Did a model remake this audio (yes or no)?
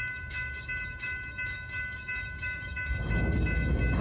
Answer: yes